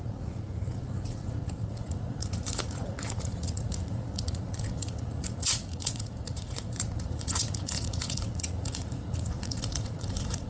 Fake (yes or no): yes